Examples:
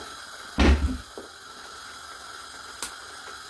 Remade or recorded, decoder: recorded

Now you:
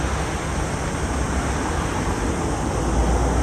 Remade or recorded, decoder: recorded